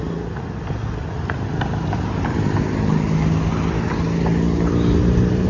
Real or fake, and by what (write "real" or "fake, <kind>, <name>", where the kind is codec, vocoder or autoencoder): real